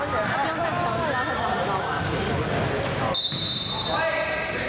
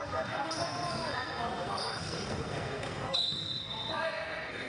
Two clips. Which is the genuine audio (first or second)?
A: first